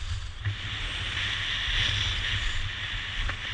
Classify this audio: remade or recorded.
recorded